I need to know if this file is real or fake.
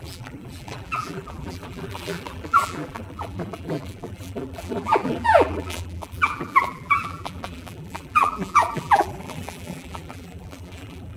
fake